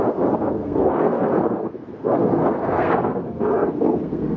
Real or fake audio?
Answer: fake